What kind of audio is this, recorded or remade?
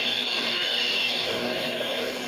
remade